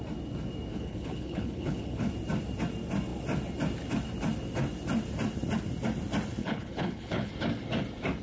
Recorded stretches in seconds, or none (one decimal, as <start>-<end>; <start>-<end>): 0.0-0.7; 2.1-6.4; 7.3-8.2